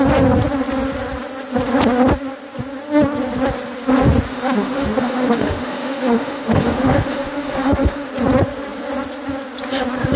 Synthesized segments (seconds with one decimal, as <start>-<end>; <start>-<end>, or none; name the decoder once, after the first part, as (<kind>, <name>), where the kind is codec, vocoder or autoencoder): 4.3-8.1 (autoencoder, DAC-VAE)